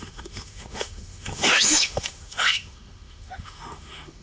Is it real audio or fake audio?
fake